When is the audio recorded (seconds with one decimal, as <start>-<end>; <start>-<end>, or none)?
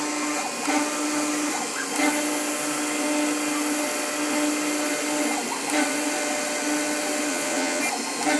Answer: 0.0-7.3; 7.8-8.4